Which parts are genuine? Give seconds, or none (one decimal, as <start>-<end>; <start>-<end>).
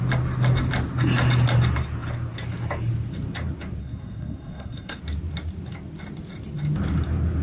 0.0-3.8; 5.0-7.4